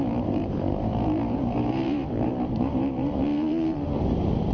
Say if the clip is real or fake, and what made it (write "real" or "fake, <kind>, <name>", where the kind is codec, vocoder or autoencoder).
fake, vocoder, BigVGAN v2